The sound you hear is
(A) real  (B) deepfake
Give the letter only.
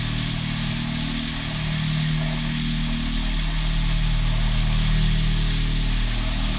A